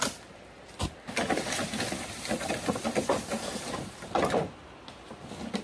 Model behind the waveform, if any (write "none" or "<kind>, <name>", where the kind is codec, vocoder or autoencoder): none